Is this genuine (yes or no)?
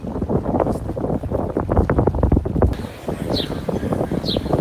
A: yes